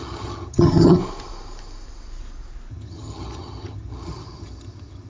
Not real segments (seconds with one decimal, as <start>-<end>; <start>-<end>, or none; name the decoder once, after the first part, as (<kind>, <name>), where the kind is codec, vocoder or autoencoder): 0.0-1.0 (vocoder, HiFi-GAN); 2.7-5.1